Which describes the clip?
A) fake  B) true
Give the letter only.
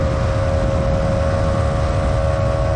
B